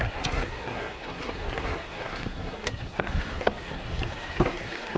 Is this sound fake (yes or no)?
yes